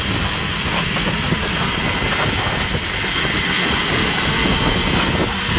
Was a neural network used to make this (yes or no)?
no